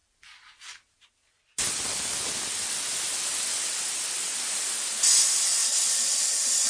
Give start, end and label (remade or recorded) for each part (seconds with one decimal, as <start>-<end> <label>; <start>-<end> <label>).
0.0-5.6 recorded; 5.6-6.2 remade; 6.2-6.7 recorded

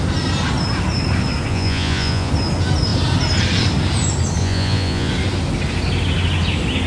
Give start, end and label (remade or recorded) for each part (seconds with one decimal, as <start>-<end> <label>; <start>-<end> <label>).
0.0-1.5 recorded; 1.5-2.3 remade; 2.3-4.4 recorded; 4.4-5.1 remade; 5.1-6.9 recorded

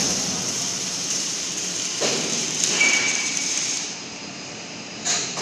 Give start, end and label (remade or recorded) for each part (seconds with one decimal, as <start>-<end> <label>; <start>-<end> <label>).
0.0-5.4 remade

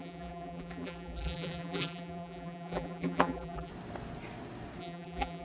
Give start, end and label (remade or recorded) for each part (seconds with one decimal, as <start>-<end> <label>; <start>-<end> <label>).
0.0-3.7 remade; 3.7-4.8 recorded; 4.8-5.4 remade

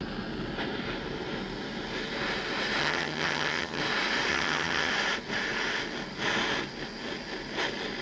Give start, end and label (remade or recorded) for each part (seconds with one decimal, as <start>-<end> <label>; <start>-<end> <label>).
0.0-2.8 recorded; 2.8-3.8 remade; 3.8-4.3 recorded; 4.3-4.9 remade; 4.9-8.0 recorded

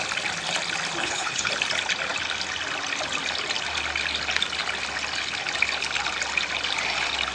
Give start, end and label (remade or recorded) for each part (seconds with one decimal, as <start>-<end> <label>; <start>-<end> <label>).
0.0-1.0 recorded; 1.0-1.5 remade; 1.5-7.3 recorded